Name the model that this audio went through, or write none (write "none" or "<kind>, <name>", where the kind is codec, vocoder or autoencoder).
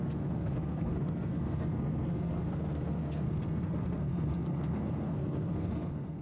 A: codec, SNAC